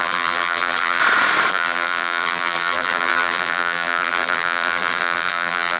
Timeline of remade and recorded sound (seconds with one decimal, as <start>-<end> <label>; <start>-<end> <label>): 0.0-1.0 remade; 1.0-1.5 recorded; 1.5-5.8 remade